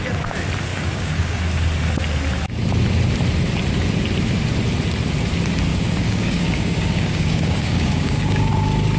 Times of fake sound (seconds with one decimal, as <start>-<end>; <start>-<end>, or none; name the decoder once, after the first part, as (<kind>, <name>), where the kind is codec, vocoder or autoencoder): 0.7-1.4 (codec, DAC); 5.7-8.5